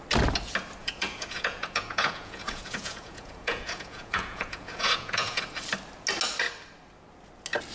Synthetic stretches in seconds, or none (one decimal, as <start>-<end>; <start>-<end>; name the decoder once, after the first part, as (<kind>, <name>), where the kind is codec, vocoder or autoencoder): 0.8-5.4 (vocoder, Vocos)